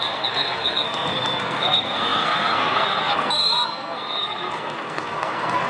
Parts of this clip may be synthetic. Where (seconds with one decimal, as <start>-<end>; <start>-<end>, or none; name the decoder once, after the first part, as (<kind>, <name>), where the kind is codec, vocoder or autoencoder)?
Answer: 0.0-5.7 (codec, SNAC)